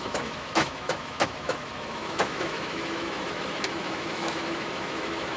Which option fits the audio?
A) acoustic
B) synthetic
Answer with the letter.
B